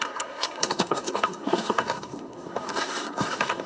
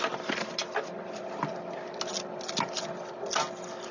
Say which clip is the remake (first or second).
first